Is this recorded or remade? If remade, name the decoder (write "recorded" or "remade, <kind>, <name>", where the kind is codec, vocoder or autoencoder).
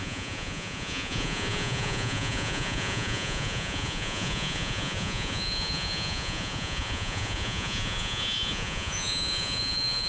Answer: remade, vocoder, Vocos